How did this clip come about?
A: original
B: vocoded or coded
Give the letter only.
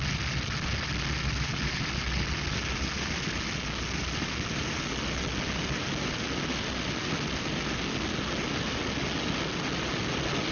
A